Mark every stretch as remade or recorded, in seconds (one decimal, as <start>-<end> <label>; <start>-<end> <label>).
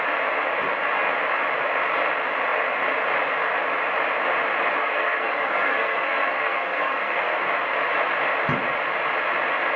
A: 0.0-4.8 recorded; 4.8-7.4 remade; 7.4-9.8 recorded